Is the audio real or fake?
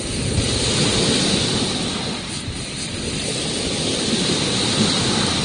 real